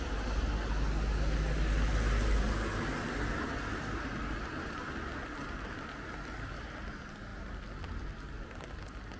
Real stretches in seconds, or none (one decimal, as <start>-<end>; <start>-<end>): 0.0-9.2